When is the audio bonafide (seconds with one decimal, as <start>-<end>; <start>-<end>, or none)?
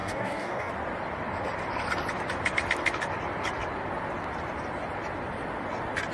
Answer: 0.7-6.1